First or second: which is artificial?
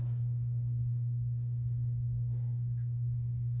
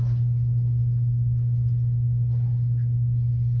first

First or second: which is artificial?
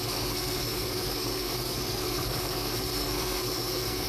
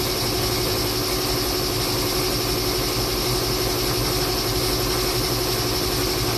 first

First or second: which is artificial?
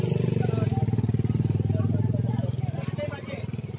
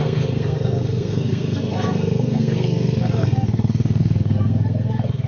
second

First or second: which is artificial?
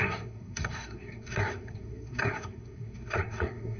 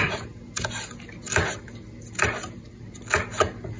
first